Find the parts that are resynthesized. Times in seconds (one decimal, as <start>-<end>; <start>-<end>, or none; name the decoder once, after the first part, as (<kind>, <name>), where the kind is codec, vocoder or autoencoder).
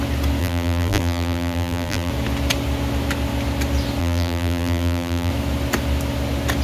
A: 0.4-2.1 (vocoder, BigVGAN v2); 4.0-5.3